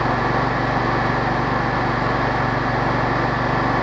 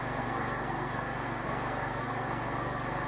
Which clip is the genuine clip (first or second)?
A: first